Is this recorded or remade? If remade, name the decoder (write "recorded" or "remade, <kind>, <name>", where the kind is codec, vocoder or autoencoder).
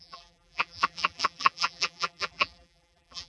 remade, vocoder, BigVGAN v2